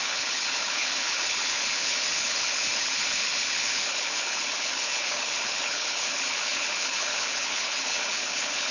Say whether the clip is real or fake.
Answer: fake